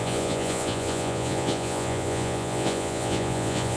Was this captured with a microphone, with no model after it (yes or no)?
no